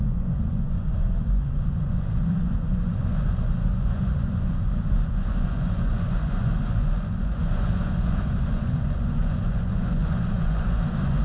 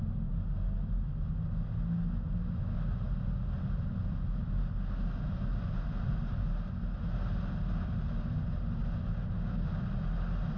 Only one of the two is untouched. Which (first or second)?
second